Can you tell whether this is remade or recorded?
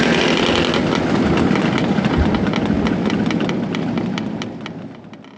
recorded